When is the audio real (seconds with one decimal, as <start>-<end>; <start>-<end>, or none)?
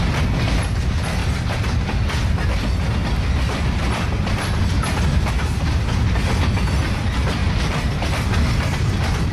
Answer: 0.0-1.2; 1.7-7.4; 8.0-9.3